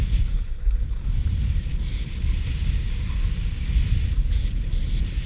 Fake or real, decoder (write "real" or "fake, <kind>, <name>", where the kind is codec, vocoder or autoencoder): real